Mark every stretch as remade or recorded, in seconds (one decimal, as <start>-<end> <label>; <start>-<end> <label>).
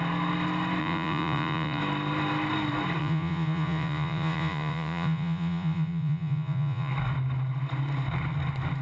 0.0-0.8 recorded; 0.8-1.8 remade; 1.8-3.0 recorded; 3.0-6.9 remade; 6.9-8.8 recorded